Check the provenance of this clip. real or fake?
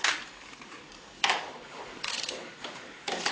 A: fake